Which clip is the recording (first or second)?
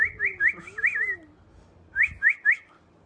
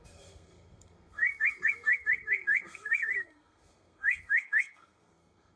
first